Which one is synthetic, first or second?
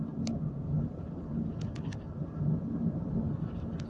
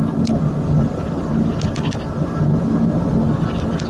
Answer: first